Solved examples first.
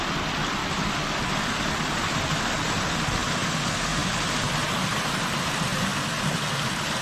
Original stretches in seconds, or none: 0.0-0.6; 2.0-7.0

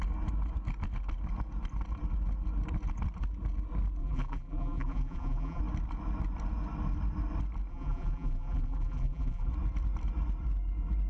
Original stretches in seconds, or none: 0.0-4.0; 5.6-7.7; 9.5-11.1

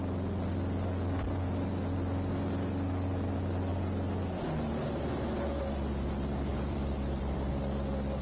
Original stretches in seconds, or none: 0.0-6.5; 7.5-8.2

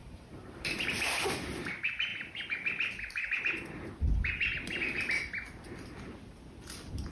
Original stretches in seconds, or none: 0.9-7.1

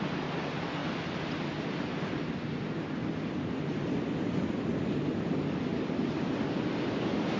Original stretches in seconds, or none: 0.0-0.8; 2.6-3.0; 3.5-5.7

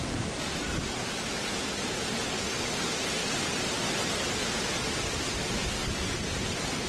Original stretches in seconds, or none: 0.8-3.2; 4.1-5.8; 6.5-6.9